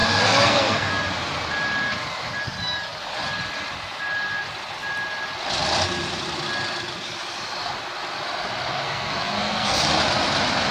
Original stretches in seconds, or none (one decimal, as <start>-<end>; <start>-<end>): 0.9-8.7; 9.8-10.7